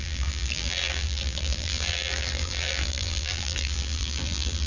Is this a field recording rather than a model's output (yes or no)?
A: no